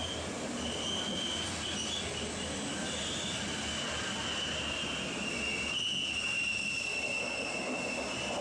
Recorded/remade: recorded